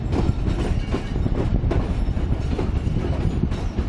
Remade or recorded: recorded